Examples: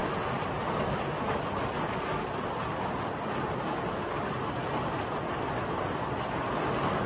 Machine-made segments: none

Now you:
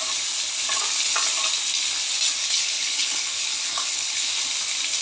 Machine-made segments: 2.4-4.3 (codec, HILCodec)

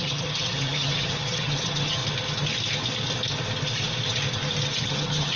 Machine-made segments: 0.0-2.0 (vocoder, HiFi-GAN); 4.9-5.4